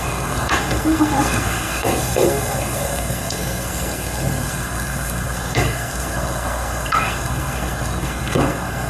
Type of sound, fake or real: fake